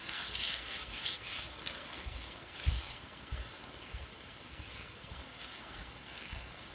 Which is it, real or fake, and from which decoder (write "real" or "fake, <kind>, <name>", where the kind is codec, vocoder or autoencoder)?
fake, codec, SNAC